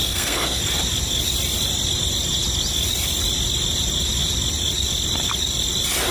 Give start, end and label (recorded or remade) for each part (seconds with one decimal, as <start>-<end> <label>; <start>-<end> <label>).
0.0-0.6 remade; 0.6-6.1 recorded